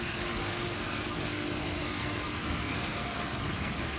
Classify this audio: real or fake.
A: fake